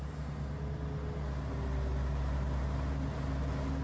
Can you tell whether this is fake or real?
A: real